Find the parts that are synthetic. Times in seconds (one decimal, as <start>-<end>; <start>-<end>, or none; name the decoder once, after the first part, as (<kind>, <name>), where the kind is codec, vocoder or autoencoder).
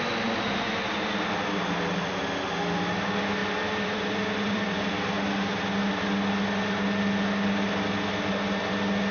3.4-4.9 (vocoder, BigVGAN v2)